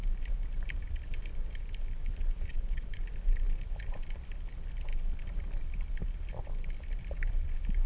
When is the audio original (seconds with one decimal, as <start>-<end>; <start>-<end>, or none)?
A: 0.0-2.5; 3.0-7.9